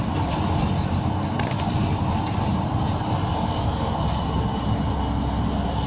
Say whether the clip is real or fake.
real